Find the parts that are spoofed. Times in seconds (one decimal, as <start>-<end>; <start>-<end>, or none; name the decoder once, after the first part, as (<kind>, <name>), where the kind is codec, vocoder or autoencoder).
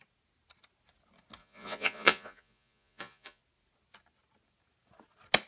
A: 1.4-3.4 (vocoder, Vocos)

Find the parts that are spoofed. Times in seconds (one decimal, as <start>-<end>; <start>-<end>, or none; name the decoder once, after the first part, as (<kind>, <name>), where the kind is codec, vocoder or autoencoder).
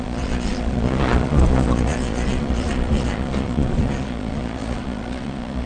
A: 0.0-5.7 (vocoder, Vocos)